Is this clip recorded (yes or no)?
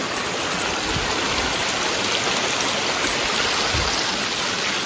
yes